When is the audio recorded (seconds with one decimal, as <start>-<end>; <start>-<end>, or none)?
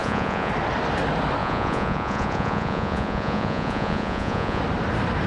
0.5-1.4; 4.6-5.3